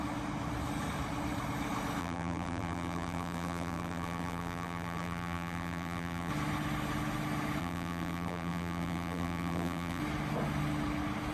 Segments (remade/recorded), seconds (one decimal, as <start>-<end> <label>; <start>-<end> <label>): 0.0-2.0 recorded; 2.0-6.3 remade; 6.3-7.6 recorded; 7.6-10.0 remade; 10.0-11.3 recorded